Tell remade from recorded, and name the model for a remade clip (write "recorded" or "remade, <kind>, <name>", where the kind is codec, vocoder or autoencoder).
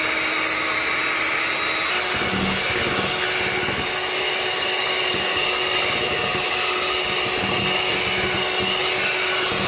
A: recorded